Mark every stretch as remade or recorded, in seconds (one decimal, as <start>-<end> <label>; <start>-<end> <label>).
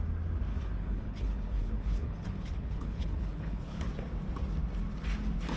0.0-0.5 recorded; 0.5-3.9 remade; 3.9-5.6 recorded